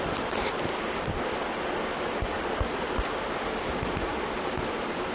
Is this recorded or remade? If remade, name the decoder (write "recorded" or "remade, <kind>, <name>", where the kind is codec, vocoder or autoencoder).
recorded